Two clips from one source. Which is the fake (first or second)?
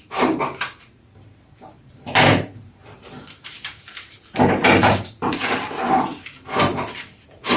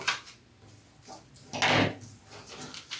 first